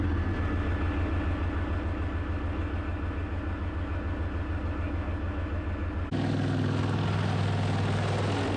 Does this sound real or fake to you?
real